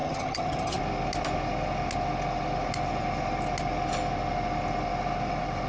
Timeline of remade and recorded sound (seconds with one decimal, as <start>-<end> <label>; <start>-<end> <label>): 0.0-0.8 remade; 0.8-5.7 recorded